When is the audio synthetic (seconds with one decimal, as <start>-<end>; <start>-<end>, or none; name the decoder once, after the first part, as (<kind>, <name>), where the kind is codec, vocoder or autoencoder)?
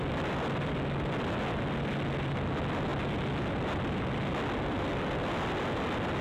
none